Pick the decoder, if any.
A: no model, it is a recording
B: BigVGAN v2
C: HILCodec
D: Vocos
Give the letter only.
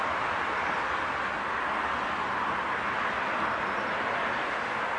A